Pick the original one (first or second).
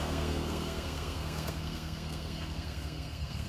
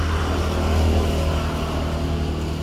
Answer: second